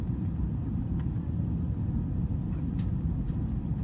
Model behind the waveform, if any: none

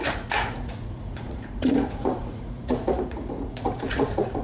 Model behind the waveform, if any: vocoder, Vocos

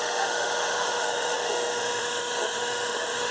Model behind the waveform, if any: autoencoder, DAC-VAE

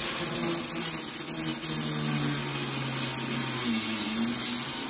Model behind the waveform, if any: none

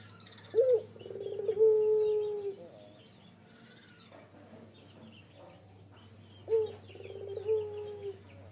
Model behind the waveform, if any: none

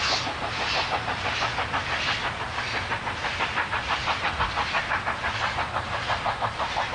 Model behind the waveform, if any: none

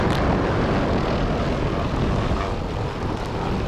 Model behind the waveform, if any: none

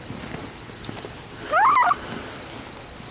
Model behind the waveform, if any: none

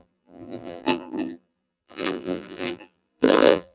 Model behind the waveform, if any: vocoder, BigVGAN v2